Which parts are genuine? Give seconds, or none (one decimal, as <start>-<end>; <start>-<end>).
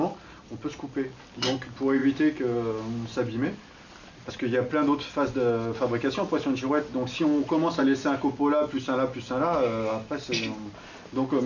0.0-11.5